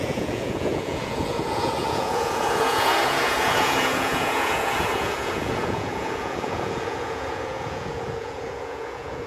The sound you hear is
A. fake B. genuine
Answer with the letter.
A